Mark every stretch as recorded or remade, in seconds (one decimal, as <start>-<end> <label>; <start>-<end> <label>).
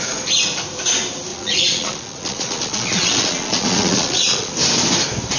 0.0-1.3 recorded; 1.3-4.5 remade; 4.5-5.4 recorded